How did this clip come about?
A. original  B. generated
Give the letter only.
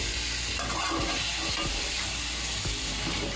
A